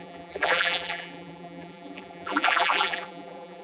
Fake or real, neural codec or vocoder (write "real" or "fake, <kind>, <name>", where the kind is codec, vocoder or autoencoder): fake, vocoder, BigVGAN v2